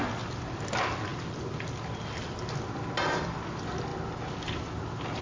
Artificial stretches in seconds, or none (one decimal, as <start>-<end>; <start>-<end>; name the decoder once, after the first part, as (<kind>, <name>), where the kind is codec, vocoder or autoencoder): 3.9-4.8 (vocoder, BigVGAN v2)